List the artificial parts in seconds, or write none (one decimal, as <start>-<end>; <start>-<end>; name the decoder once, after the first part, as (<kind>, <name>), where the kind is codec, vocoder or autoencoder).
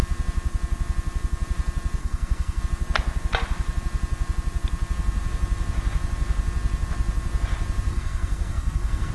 2.0-2.6 (codec, SNAC); 7.9-9.1